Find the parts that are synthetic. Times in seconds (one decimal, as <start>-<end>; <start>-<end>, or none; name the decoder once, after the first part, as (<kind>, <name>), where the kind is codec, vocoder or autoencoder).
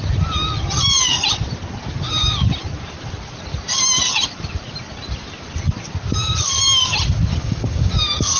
7.3-8.0 (codec, DAC)